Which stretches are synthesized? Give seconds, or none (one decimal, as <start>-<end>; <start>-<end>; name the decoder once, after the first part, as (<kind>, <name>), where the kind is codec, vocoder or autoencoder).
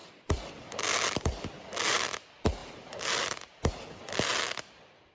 0.0-0.5 (vocoder, BigVGAN v2); 2.6-3.7; 4.3-5.1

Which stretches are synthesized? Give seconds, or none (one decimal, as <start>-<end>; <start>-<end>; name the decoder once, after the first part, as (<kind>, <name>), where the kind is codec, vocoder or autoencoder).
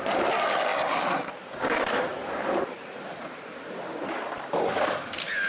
0.7-1.4 (vocoder, BigVGAN v2); 2.1-3.5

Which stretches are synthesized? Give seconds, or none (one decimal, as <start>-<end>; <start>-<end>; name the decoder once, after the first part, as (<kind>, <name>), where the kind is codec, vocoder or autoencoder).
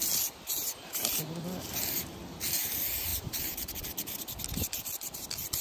3.1-3.7 (vocoder, BigVGAN v2)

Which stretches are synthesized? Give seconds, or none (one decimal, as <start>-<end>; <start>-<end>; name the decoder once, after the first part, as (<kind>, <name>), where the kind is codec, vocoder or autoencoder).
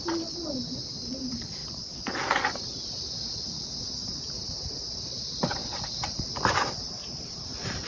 0.0-1.6 (vocoder, BigVGAN v2); 4.3-7.9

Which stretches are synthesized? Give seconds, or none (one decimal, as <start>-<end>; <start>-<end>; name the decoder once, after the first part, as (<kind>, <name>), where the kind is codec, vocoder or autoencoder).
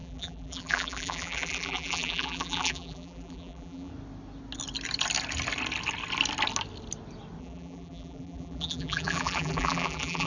0.0-3.9 (vocoder, BigVGAN v2); 7.4-10.3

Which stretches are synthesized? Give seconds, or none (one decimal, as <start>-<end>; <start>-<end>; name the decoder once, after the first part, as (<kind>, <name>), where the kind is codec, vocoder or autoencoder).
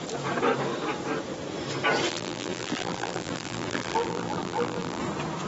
2.1-5.0 (vocoder, BigVGAN v2)